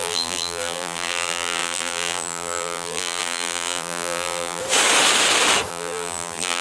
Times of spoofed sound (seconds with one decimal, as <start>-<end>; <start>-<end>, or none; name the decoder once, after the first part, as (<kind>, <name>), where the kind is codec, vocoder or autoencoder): 0.0-4.6 (vocoder, BigVGAN v2); 5.7-6.6